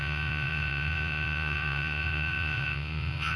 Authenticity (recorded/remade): remade